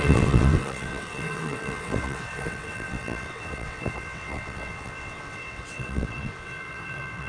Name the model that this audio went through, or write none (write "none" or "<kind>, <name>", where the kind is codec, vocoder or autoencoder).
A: vocoder, WaveNeXt